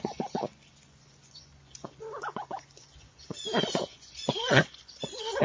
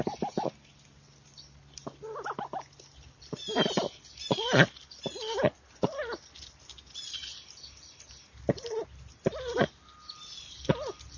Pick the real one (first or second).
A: second